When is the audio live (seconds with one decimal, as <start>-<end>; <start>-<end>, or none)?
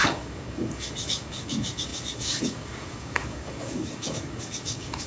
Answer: none